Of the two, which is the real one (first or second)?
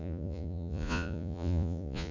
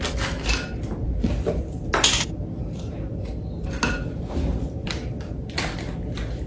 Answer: second